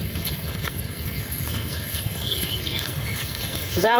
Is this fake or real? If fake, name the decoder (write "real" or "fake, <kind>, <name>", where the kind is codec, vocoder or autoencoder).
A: fake, codec, SNAC